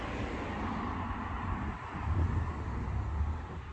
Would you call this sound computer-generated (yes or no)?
no